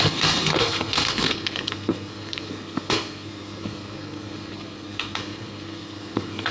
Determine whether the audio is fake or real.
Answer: fake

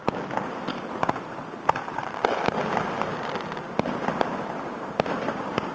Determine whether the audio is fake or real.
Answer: real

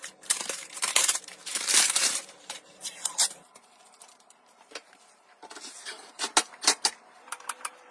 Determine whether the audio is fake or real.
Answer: fake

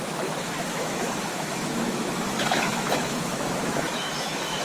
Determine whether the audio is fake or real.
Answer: fake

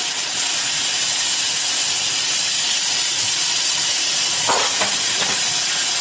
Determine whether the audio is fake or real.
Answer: real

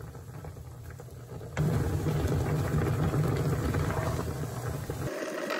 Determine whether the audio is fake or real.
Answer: fake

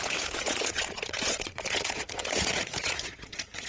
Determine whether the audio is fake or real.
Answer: fake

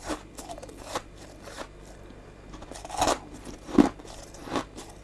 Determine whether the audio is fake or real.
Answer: real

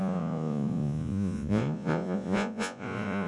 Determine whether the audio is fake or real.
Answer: fake